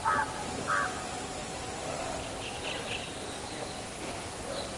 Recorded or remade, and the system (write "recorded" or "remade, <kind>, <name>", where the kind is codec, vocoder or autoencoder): recorded